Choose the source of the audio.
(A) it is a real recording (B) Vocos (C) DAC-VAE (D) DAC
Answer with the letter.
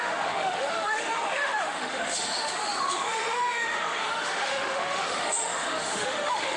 C